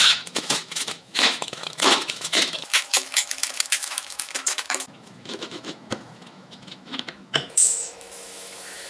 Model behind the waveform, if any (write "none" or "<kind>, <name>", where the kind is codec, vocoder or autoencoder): autoencoder, DAC-VAE